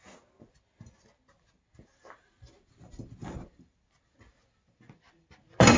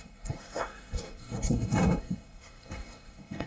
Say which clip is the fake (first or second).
second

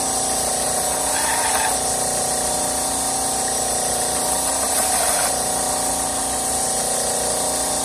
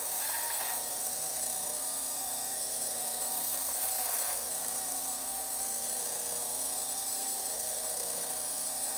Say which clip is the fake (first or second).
second